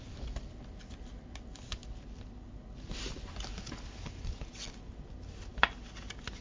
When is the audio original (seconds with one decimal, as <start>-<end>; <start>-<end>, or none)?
0.0-6.4